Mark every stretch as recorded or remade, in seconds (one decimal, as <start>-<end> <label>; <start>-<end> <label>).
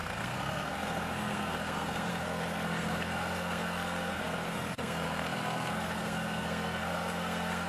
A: 0.0-7.7 remade